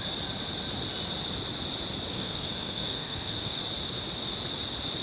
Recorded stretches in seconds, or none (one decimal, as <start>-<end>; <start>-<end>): 0.0-2.1; 3.6-5.0